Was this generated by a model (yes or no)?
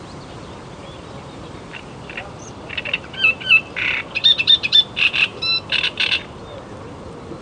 yes